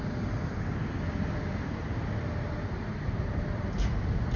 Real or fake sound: real